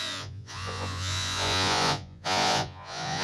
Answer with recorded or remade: remade